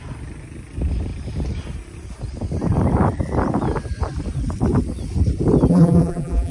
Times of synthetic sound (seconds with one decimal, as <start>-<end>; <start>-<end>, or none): 5.7-6.5